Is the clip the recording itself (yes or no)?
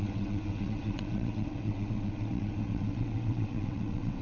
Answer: no